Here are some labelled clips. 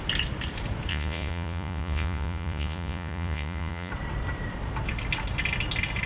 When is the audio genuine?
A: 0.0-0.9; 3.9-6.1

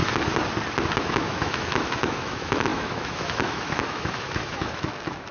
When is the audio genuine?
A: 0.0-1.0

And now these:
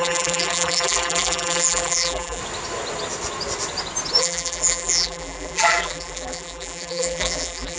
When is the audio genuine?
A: 2.4-4.2

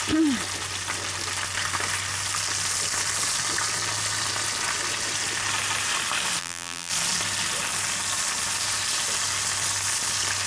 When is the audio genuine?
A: 0.0-6.4; 6.9-10.5